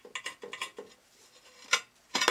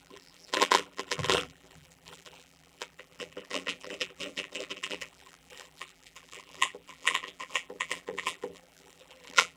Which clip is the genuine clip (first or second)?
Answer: first